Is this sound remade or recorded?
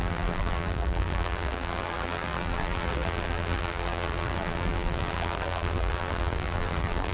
remade